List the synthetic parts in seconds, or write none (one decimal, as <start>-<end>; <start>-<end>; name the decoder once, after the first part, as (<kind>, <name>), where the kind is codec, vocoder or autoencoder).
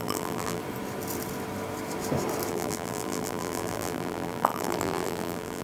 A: 0.0-0.6 (vocoder, BigVGAN v2); 2.5-5.6